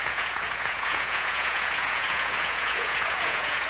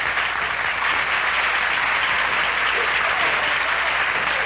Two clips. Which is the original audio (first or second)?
second